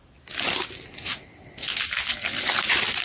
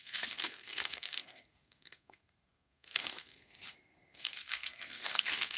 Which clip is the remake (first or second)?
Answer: second